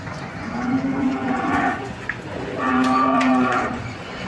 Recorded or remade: remade